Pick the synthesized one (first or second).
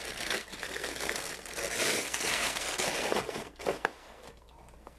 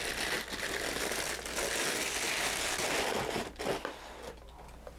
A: first